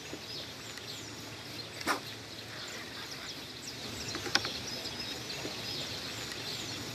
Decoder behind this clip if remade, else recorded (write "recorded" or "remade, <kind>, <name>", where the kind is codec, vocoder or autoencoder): recorded